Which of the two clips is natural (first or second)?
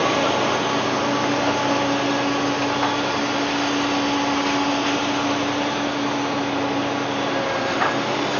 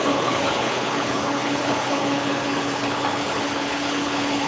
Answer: first